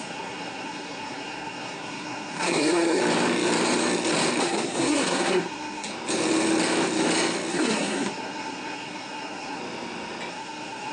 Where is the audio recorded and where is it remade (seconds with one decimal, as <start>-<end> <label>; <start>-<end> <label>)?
0.0-3.0 remade; 3.0-4.4 recorded; 4.4-5.9 remade; 5.9-7.5 recorded; 7.5-9.6 remade; 9.6-10.3 recorded; 10.3-10.9 remade